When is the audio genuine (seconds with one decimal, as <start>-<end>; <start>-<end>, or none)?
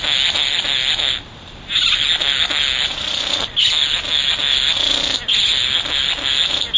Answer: 0.0-6.8